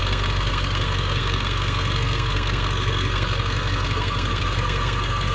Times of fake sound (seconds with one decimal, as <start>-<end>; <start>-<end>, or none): 0.0-5.3